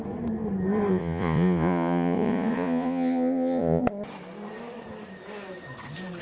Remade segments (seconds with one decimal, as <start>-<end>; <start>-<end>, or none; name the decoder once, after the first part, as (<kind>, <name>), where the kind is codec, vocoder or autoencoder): 0.9-3.8 (vocoder, Vocos)